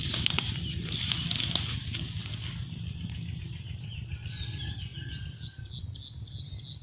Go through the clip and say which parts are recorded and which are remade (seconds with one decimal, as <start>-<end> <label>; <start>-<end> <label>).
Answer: 0.0-6.8 recorded